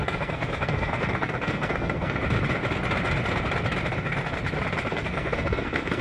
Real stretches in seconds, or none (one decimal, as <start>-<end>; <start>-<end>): 2.2-4.9